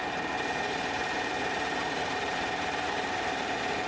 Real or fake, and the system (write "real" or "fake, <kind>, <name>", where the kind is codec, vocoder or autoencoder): real